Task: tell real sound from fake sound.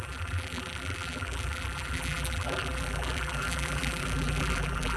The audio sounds fake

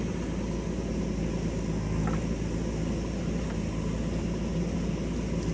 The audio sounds real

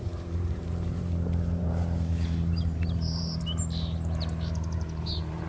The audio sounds fake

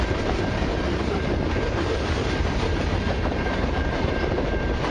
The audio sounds fake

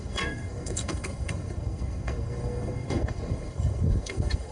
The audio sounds fake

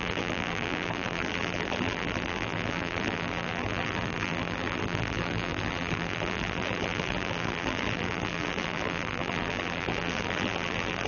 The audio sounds fake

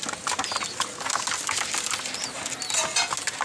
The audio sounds real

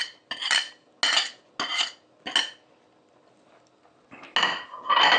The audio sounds real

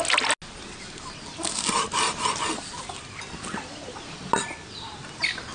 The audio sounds real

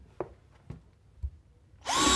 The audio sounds real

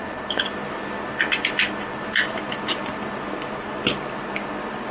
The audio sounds real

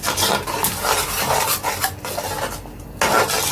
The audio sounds real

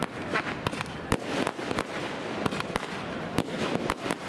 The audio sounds real